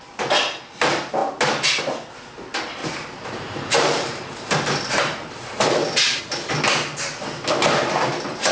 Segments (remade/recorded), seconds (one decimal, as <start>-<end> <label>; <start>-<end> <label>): 0.0-2.8 recorded; 2.8-6.2 remade; 6.2-8.5 recorded